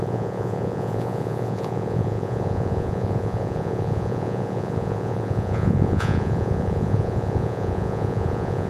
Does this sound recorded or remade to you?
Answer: remade